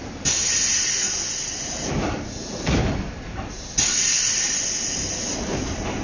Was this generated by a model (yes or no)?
no